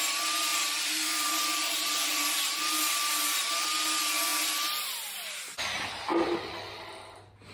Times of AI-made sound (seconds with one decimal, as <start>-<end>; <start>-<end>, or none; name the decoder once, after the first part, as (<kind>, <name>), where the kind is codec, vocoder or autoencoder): 0.5-2.6 (vocoder, BigVGAN v2)